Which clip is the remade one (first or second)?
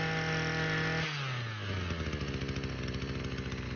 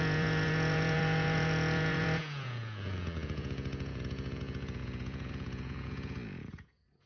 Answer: second